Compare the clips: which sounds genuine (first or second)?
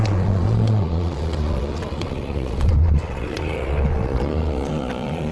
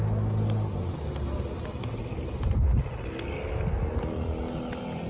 second